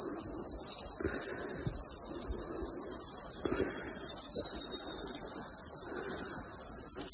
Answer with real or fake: real